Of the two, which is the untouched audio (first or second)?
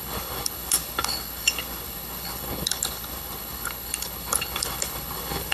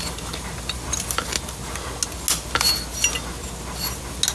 second